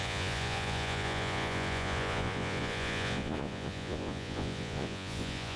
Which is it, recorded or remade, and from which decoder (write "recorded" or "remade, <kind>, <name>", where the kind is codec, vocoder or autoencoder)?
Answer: remade, vocoder, Vocos